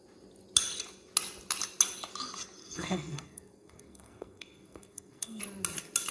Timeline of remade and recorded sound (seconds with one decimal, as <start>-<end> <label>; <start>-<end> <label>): 0.0-2.6 recorded; 2.6-5.4 remade; 5.4-6.1 recorded